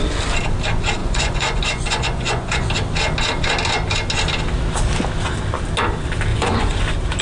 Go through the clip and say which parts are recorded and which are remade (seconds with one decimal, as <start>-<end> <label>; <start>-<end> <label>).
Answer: 0.0-1.0 recorded; 1.0-2.7 remade; 2.7-6.3 recorded; 6.3-6.8 remade; 6.8-7.2 recorded